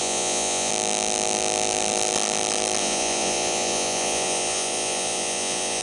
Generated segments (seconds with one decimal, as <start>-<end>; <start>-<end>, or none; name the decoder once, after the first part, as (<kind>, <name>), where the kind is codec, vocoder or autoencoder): 0.0-0.7 (vocoder, Vocos); 2.8-5.8

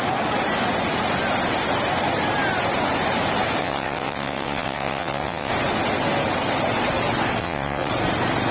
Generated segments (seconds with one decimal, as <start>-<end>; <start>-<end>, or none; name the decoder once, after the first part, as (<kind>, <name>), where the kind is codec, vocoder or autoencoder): 3.6-5.5 (vocoder, WaveNeXt); 7.4-7.9